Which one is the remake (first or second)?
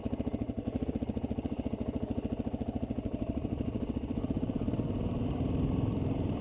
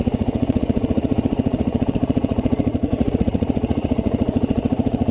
second